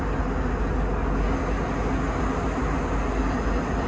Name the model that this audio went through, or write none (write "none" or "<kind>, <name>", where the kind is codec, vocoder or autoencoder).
none